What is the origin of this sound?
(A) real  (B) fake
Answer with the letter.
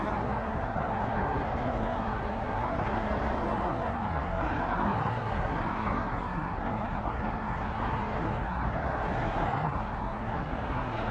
B